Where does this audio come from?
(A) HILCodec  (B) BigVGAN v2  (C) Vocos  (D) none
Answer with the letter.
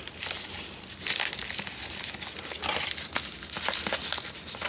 D